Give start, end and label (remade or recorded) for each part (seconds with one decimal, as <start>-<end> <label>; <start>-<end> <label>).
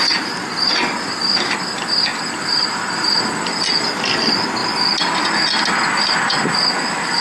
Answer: 0.0-7.2 recorded